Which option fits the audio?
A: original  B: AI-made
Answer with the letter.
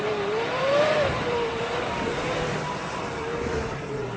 B